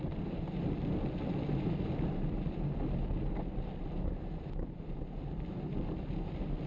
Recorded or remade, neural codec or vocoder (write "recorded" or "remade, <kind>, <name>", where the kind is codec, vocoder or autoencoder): recorded